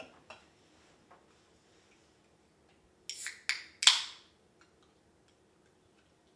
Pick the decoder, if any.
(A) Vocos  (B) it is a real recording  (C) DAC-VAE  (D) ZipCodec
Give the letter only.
B